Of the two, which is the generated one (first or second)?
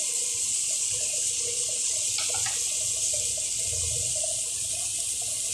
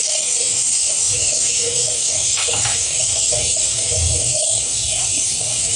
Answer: second